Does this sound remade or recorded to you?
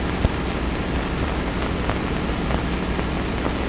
recorded